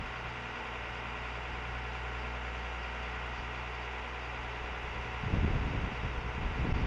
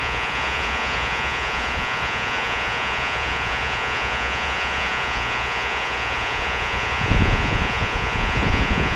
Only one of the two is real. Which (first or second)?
first